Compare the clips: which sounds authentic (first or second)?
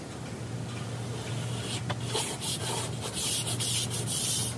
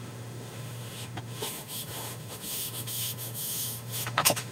first